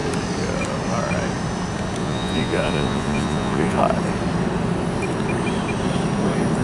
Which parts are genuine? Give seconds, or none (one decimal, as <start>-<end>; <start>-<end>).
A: 0.0-2.0; 3.8-6.6